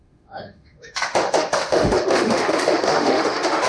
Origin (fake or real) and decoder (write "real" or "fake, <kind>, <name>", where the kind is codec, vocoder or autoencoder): fake, autoencoder, DAC-VAE